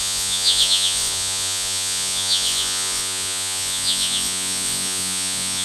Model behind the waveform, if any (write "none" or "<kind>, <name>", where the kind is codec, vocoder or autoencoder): vocoder, Vocos